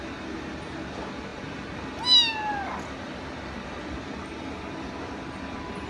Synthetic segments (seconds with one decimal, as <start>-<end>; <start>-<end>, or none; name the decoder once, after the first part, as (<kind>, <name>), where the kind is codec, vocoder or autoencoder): none